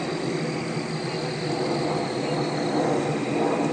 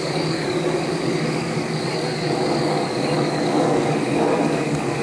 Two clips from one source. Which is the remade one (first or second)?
second